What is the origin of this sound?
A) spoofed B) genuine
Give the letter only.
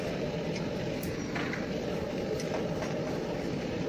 B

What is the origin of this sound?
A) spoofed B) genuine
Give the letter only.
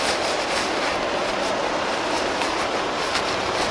B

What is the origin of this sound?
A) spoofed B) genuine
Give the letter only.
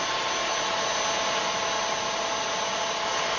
B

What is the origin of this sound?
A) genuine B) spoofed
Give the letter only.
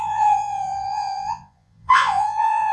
B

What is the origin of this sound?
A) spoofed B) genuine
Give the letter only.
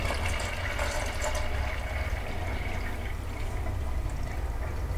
B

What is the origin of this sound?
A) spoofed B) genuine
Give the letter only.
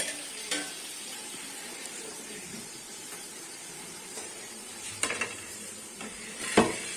A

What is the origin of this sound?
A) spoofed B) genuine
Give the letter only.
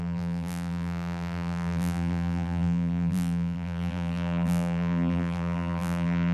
A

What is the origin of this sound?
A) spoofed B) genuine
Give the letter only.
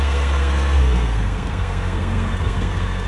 A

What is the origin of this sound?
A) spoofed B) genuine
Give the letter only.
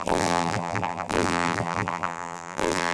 A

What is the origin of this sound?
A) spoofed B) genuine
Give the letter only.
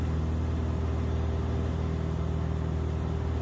B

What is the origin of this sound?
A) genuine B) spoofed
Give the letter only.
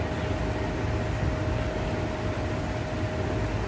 A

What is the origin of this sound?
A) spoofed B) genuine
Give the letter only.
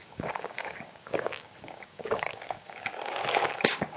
A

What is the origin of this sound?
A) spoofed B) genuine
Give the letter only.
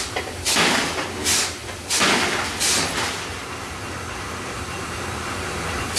B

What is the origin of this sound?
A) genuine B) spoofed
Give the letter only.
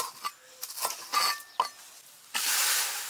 A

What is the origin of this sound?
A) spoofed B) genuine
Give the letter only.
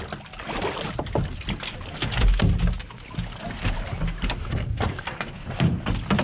B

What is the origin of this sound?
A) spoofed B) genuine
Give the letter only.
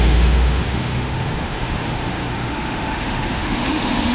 A